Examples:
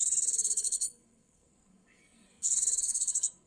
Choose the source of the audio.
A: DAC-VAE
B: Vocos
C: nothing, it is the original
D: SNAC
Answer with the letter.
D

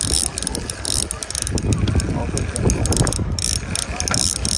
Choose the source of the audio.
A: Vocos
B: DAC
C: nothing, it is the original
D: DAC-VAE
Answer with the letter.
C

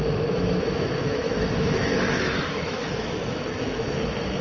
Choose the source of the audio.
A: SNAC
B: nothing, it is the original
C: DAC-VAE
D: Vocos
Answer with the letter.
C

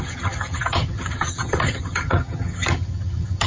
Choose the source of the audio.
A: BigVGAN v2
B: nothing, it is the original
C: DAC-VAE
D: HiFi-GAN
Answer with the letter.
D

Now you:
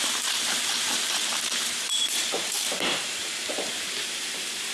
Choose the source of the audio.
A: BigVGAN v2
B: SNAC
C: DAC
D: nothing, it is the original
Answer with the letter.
A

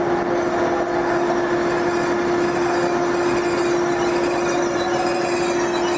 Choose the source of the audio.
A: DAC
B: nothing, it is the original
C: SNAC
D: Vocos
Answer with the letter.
B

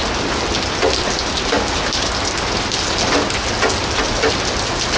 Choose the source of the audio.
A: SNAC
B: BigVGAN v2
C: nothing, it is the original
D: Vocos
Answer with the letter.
C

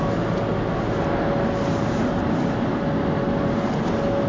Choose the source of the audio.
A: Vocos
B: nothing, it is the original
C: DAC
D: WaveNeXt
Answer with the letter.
B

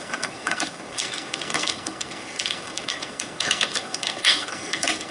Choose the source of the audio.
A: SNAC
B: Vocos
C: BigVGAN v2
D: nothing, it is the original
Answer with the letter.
A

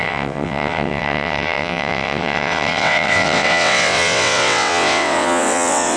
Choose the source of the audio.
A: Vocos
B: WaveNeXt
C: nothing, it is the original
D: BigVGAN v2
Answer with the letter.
B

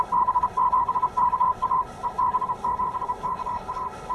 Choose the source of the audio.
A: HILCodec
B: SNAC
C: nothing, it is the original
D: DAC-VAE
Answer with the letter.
A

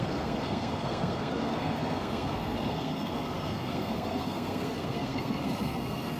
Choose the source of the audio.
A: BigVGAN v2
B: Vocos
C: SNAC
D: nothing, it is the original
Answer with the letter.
C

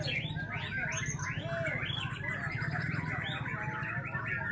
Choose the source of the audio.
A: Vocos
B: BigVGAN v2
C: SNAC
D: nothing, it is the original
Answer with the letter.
D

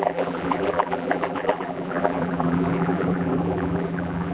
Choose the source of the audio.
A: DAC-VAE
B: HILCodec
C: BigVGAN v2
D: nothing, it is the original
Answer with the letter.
C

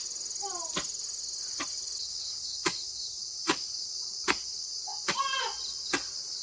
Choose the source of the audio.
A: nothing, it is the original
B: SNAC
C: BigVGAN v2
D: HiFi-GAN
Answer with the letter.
A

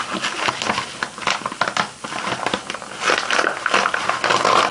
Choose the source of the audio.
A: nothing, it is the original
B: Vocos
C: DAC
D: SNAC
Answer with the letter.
A